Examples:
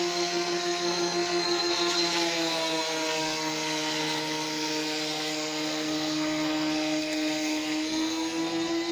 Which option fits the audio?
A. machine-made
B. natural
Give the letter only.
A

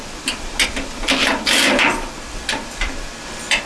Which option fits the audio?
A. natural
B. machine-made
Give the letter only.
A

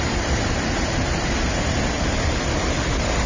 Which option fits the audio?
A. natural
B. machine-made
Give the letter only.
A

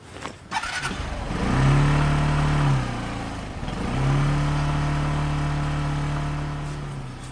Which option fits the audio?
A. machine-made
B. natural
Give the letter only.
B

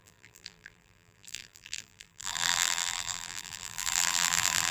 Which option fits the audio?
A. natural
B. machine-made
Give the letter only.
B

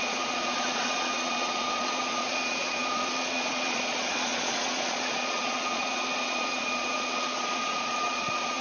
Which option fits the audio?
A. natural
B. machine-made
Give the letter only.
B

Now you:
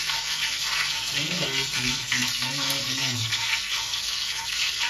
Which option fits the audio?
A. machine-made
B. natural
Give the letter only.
A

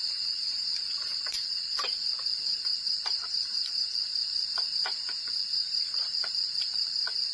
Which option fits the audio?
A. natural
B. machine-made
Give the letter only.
B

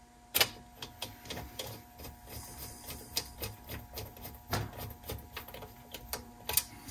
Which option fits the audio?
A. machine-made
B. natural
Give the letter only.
B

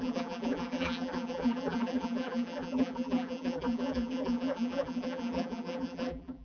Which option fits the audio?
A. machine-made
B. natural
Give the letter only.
A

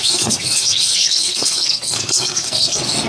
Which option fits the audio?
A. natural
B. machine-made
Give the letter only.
B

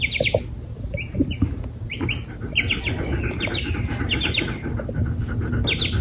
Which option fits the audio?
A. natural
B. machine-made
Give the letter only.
A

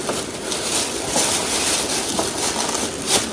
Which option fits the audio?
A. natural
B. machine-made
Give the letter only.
A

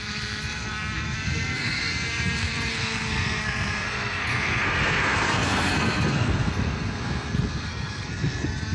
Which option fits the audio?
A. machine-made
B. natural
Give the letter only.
A